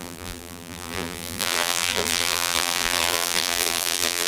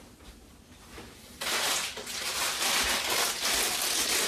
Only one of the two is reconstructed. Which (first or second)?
first